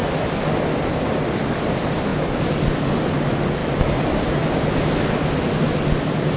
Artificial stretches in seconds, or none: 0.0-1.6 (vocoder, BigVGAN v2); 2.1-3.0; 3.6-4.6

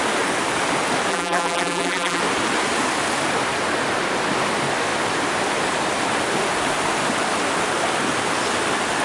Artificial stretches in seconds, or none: 1.1-2.2 (vocoder, BigVGAN v2)

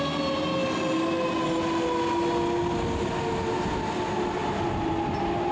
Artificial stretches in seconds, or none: none